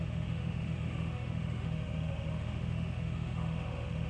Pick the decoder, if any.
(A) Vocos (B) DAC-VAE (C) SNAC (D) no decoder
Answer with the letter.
B